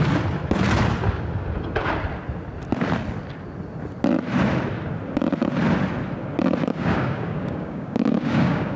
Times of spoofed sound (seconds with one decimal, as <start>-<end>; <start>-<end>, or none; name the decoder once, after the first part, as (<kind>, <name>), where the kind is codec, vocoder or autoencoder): 6.7-8.8 (codec, DAC)